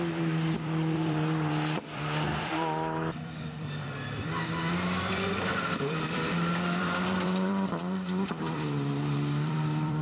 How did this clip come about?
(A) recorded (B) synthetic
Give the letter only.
B